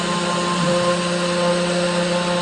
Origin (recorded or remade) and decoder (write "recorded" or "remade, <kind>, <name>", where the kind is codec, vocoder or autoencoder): recorded